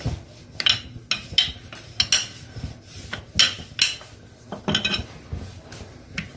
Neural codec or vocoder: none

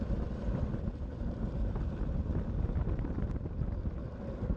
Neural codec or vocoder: vocoder, BigVGAN v2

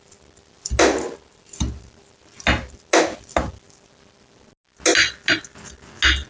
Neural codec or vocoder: none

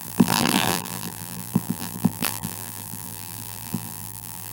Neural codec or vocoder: vocoder, BigVGAN v2